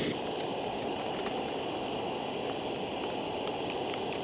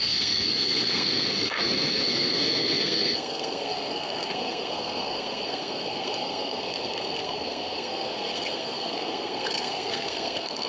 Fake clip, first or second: second